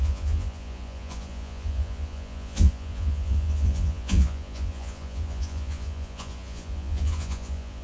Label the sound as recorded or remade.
remade